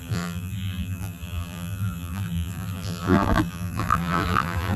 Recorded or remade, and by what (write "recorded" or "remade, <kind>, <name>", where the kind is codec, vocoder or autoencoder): remade, vocoder, BigVGAN v2